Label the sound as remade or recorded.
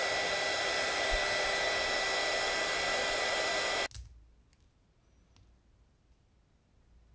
recorded